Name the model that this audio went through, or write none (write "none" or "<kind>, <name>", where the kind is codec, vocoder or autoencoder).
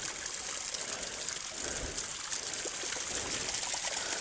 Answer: none